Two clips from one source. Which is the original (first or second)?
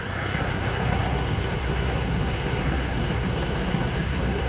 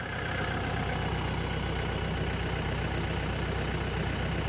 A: second